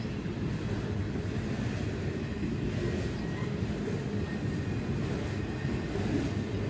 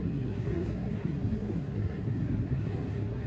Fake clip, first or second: second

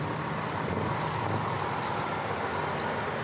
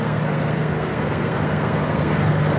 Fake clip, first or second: second